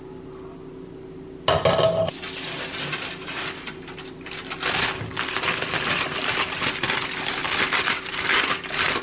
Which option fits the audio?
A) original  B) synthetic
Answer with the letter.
A